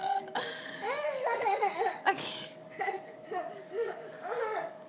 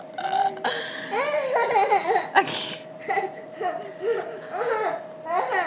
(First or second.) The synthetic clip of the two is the first